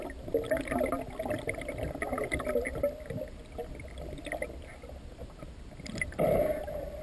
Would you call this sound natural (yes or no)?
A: yes